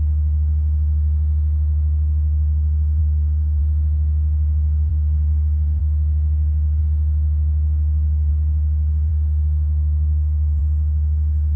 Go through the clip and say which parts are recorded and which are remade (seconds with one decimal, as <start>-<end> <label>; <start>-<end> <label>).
0.0-3.0 recorded; 3.0-3.6 remade; 3.6-4.9 recorded; 4.9-5.8 remade; 5.8-9.1 recorded; 9.1-10.6 remade; 10.6-11.6 recorded